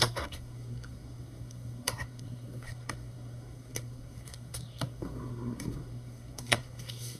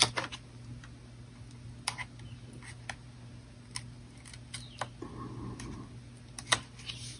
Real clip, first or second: second